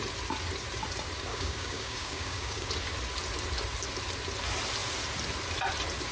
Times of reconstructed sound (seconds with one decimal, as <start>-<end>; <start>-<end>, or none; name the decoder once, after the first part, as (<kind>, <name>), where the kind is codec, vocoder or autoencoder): 1.3-2.7 (codec, DAC)